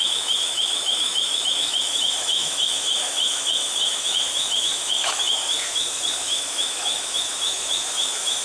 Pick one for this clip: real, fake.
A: fake